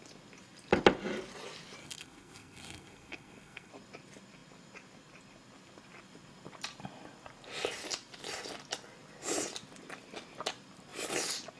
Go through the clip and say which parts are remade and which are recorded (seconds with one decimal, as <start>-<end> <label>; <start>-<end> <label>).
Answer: 0.0-1.8 recorded; 1.8-3.7 remade; 3.7-11.6 recorded